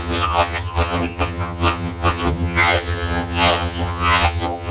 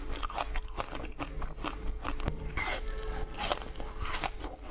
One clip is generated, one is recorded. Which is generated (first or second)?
first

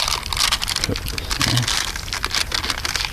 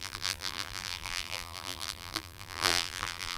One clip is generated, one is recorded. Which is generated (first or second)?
second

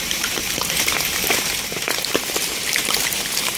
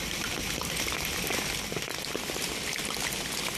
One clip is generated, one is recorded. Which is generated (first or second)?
first